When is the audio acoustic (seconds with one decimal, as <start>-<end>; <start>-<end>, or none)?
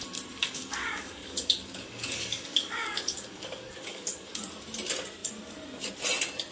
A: 0.0-0.4; 4.3-6.5